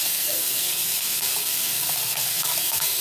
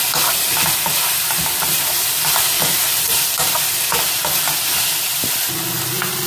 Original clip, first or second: second